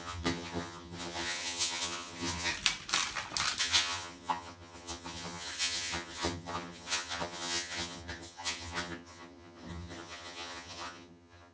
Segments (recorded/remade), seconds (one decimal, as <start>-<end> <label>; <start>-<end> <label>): 0.0-2.5 remade; 2.5-3.6 recorded; 3.6-11.5 remade